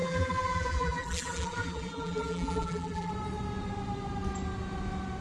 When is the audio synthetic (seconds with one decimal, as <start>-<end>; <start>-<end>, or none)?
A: 0.0-3.1